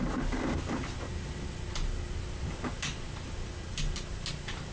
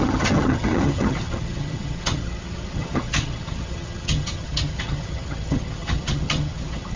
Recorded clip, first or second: first